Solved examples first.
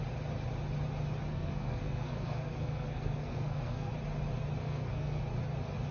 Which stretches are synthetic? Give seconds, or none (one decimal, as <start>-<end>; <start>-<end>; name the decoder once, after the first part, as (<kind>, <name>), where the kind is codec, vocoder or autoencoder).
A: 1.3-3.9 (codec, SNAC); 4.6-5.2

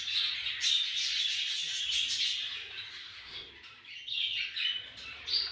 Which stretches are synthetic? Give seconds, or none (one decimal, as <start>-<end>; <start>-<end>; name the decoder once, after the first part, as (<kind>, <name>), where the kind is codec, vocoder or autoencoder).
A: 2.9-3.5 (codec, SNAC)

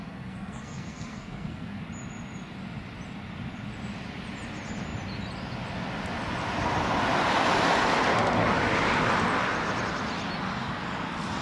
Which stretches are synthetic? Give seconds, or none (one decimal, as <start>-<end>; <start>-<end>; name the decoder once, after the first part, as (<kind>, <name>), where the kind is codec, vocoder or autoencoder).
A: 0.0-1.8 (codec, SNAC)